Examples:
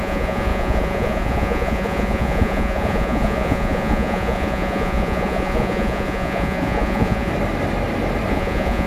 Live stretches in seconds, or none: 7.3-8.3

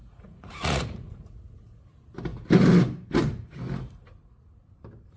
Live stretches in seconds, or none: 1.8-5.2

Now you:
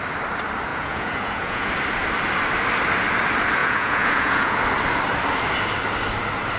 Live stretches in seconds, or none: 0.0-0.7; 1.7-3.6; 4.6-6.6